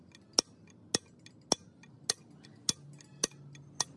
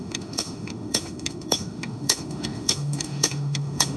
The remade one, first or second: second